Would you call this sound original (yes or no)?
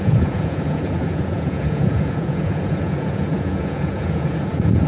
no